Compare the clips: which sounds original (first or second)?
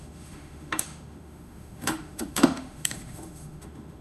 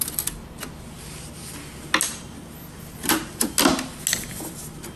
second